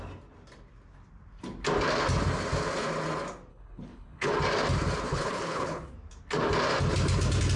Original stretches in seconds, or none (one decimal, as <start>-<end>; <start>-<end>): 0.0-3.5; 4.3-5.1; 5.9-7.6